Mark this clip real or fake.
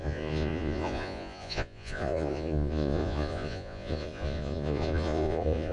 fake